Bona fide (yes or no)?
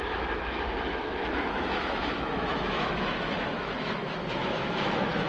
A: no